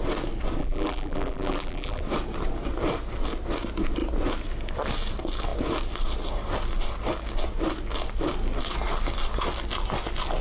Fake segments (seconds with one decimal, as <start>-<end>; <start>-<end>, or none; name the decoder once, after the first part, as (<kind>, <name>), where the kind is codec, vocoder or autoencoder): 0.6-2.0 (vocoder, BigVGAN v2)

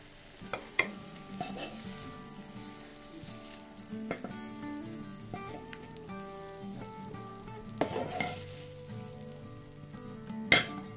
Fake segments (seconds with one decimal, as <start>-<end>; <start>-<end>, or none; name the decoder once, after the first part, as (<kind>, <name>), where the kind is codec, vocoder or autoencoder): 0.7-1.2 (vocoder, Vocos)